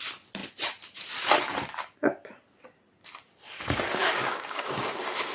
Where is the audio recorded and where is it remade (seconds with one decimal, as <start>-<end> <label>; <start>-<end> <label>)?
0.0-4.0 recorded; 4.0-4.8 remade; 4.8-5.3 recorded